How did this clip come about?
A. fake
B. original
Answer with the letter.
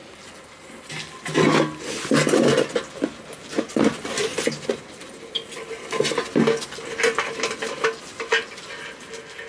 B